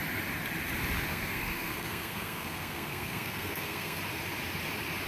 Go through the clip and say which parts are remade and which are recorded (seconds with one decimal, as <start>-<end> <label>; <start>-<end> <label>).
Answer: 0.0-1.1 recorded; 1.1-4.0 remade; 4.0-5.1 recorded

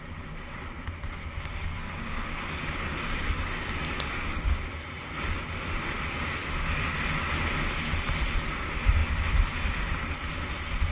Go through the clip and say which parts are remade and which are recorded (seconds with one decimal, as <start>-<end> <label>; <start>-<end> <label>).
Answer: 0.0-1.2 recorded; 1.2-4.6 remade; 4.6-10.9 recorded

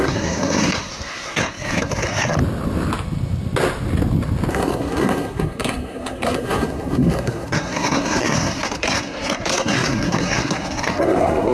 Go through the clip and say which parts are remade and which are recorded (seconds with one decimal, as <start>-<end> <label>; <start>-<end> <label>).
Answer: 0.0-2.4 remade; 2.4-4.5 recorded; 4.5-11.5 remade